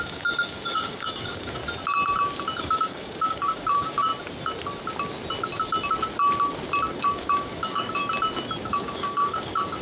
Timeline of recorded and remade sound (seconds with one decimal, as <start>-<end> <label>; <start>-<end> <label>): 0.0-1.6 remade; 1.6-2.6 recorded; 2.6-4.1 remade; 4.1-6.9 recorded; 6.9-8.0 remade; 8.0-8.6 recorded; 8.6-9.8 remade